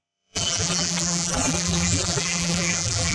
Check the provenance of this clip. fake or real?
fake